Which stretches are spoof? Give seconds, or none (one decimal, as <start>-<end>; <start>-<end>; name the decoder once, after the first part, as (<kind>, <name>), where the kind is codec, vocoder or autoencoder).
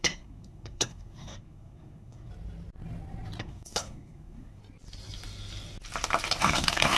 0.0-2.3 (codec, SNAC); 3.4-4.6; 6.4-7.0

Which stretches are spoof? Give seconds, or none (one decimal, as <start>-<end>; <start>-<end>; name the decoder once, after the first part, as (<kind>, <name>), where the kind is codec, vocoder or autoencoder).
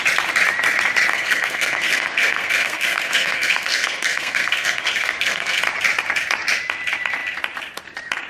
1.1-5.6 (codec, SNAC)